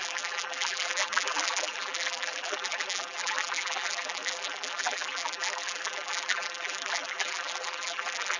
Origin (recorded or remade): remade